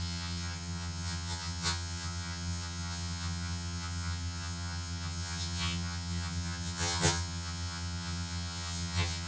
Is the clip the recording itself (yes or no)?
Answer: no